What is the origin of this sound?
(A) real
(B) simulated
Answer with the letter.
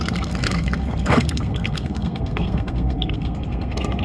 B